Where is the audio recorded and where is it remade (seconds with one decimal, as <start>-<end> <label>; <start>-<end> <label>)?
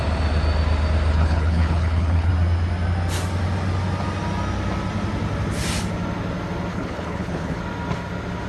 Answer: 0.0-1.1 recorded; 1.1-2.3 remade; 2.3-6.7 recorded; 6.7-7.6 remade; 7.6-8.5 recorded